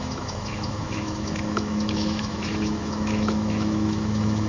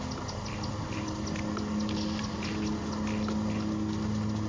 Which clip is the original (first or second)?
second